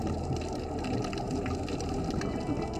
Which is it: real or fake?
real